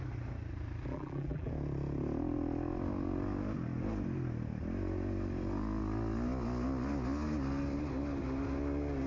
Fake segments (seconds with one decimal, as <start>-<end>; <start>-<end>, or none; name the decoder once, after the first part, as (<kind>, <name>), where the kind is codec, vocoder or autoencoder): 0.9-1.5 (vocoder, BigVGAN v2)